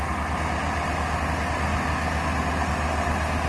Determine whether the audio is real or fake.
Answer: real